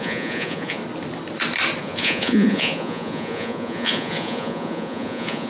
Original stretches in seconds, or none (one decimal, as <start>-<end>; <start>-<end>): 0.8-1.8